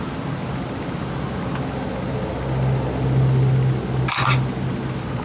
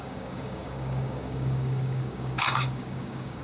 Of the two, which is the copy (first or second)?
second